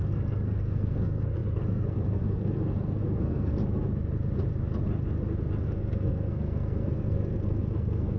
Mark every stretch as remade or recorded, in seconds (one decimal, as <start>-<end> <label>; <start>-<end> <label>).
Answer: 0.0-3.6 remade; 3.6-5.6 recorded; 5.6-8.2 remade